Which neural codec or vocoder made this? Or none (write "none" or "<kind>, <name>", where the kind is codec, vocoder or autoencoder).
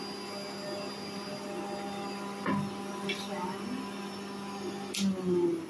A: none